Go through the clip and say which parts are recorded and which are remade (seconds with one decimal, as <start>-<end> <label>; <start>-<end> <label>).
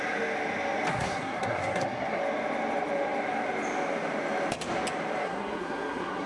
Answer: 0.0-0.9 recorded; 0.9-2.2 remade; 2.2-5.2 recorded; 5.2-6.3 remade